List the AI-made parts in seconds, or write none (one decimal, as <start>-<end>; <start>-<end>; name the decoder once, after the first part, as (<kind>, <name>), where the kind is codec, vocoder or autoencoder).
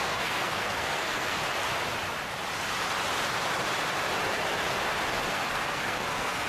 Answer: 0.0-1.4 (codec, SNAC); 5.3-6.5